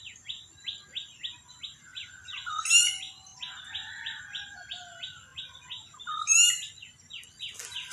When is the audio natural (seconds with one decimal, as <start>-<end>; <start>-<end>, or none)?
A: 0.0-7.9